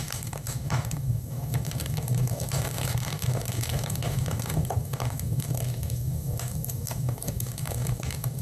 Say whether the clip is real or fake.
fake